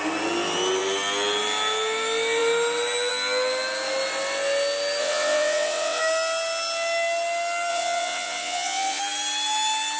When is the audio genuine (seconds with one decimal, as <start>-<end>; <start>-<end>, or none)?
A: 0.0-5.0; 6.0-7.7; 9.0-10.0